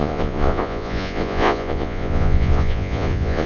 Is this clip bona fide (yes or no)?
no